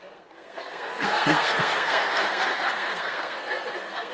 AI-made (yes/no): yes